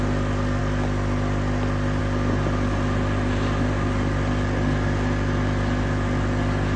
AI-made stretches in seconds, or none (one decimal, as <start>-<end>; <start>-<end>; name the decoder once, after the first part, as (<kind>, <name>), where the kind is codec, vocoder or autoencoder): none

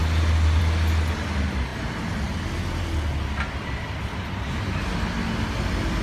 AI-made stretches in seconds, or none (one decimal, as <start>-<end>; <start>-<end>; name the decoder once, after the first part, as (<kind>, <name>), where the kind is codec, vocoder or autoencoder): none